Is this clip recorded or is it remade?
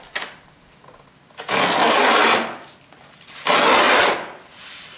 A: recorded